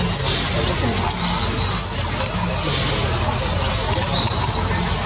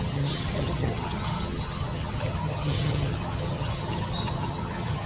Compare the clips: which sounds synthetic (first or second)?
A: second